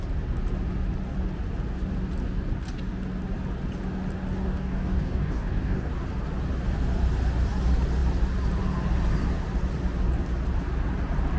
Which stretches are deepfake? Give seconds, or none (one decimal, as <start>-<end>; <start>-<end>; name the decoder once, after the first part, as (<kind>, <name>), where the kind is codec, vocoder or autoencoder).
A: 4.4-5.9 (codec, DAC)